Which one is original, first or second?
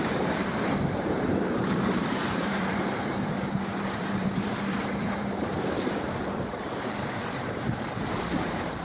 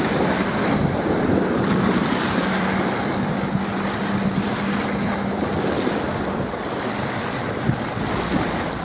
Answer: second